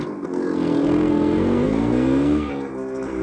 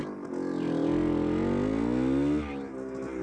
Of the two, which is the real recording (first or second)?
second